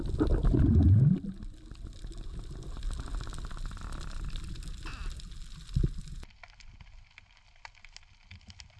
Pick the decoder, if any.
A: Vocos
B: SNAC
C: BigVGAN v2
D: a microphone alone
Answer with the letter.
D